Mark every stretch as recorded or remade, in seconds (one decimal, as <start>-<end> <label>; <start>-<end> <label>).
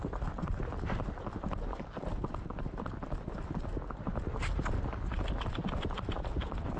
0.0-0.6 remade; 0.6-6.8 recorded